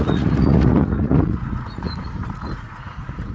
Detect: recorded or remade remade